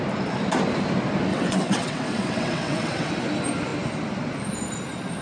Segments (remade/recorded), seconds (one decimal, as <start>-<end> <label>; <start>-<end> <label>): 0.0-1.3 recorded; 1.3-3.1 remade; 3.1-5.2 recorded